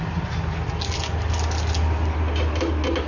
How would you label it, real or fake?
real